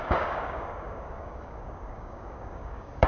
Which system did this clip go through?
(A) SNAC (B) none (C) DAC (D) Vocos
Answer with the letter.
C